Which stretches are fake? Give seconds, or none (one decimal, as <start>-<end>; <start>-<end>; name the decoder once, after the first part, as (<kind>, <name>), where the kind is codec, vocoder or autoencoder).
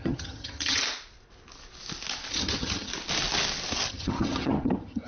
0.0-0.8 (vocoder, HiFi-GAN); 2.3-2.9; 3.9-5.1